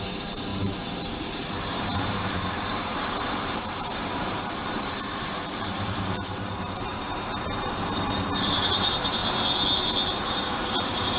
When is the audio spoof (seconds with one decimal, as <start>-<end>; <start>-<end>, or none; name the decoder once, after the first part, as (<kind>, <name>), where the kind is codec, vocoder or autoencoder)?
0.0-9.2 (vocoder, BigVGAN v2); 10.2-11.2